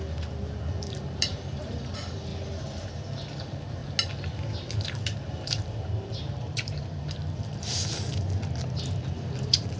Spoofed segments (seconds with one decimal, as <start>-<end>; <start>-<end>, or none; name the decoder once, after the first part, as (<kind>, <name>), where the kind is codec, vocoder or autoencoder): 0.0-2.3 (vocoder, BigVGAN v2); 3.4-3.8; 4.8-8.1; 9.0-9.8